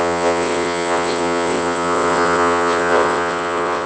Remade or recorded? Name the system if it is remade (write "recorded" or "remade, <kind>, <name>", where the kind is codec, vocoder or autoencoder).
remade, vocoder, WaveNeXt